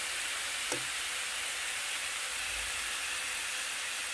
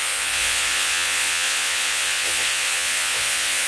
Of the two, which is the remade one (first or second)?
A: second